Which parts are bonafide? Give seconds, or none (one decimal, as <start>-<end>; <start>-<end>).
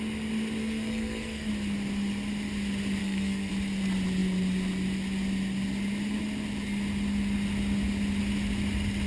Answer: 0.0-0.6; 1.5-3.0; 3.5-9.1